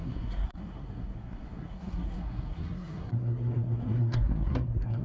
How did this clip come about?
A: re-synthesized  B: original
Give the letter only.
A